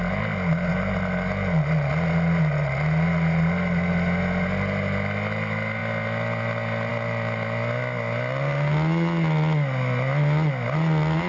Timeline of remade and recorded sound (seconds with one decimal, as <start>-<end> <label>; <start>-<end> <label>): 0.0-11.3 recorded